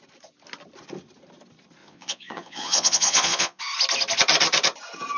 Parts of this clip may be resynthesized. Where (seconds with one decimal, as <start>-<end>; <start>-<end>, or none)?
1.8-3.6

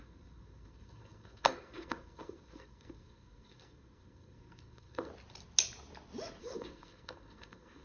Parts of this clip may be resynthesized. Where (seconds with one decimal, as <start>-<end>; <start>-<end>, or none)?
0.0-5.1; 6.4-7.8

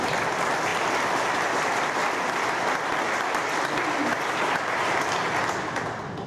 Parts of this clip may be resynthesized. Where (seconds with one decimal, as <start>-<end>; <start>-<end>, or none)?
none